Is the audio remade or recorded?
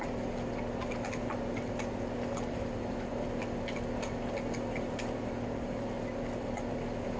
recorded